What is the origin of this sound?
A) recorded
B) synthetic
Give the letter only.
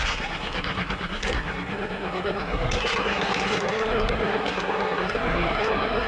B